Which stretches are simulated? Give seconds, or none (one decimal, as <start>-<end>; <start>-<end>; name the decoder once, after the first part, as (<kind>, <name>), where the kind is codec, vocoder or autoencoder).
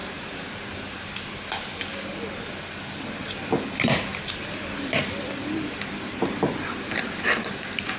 none